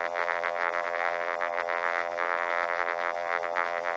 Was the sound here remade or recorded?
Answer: remade